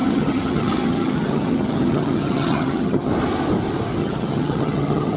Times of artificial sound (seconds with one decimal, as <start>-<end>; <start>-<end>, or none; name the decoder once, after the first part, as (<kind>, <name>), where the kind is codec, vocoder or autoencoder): 0.0-3.1 (vocoder, HiFi-GAN); 4.0-5.2